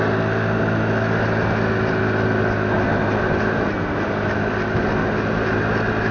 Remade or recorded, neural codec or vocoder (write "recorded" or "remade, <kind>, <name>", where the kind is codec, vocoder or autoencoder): recorded